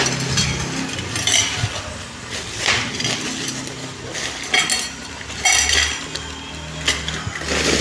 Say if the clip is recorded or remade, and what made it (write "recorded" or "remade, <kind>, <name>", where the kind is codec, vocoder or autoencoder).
recorded